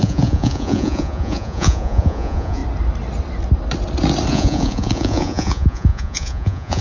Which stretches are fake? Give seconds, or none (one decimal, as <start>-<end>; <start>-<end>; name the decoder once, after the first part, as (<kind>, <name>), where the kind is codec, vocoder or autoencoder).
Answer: 0.0-2.6 (vocoder, Vocos); 4.3-6.8